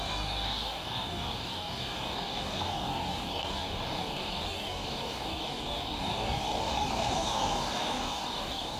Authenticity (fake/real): fake